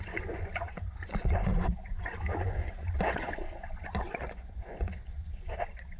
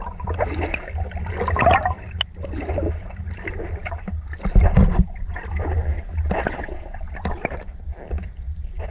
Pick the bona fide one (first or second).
second